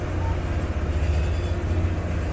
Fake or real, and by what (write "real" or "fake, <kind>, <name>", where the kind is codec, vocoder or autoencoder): real